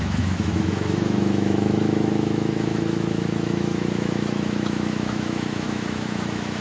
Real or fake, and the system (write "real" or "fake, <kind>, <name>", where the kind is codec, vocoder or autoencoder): fake, autoencoder, DAC-VAE